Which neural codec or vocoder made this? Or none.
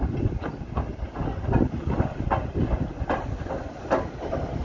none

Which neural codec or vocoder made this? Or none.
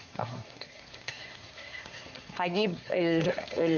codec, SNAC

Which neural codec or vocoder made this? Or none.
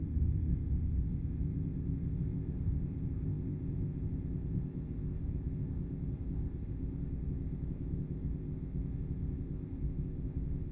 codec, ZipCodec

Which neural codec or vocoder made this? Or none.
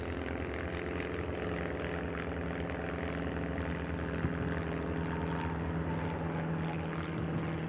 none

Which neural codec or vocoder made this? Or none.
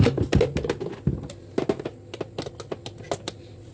none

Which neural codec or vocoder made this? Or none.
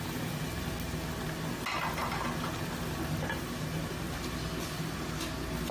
none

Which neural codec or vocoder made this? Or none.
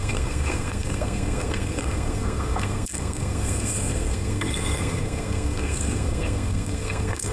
codec, SNAC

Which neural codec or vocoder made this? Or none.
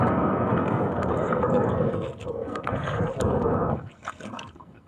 codec, SNAC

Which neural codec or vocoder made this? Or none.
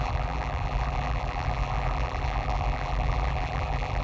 vocoder, BigVGAN v2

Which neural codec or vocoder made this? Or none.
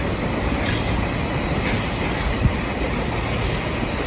none